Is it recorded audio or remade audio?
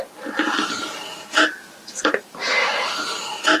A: remade